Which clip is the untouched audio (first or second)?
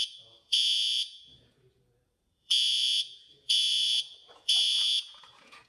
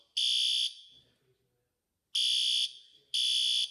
second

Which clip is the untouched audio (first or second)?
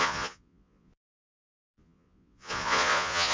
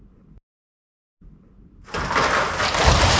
second